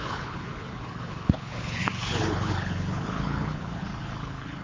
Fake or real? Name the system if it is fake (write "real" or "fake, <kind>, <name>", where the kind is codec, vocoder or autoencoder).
fake, codec, HILCodec